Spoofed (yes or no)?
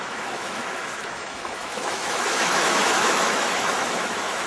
yes